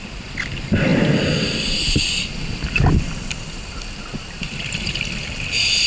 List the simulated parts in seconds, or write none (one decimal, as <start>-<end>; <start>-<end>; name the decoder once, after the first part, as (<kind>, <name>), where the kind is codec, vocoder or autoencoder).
none